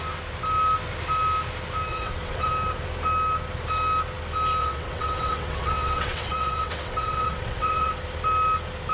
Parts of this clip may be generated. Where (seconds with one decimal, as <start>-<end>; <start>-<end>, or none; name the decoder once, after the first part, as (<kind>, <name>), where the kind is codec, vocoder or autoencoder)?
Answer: 1.9-2.5 (vocoder, WaveNeXt); 4.6-7.9